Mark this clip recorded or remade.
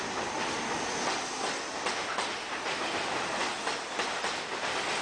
recorded